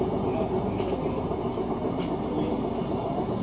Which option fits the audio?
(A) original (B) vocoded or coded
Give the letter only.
A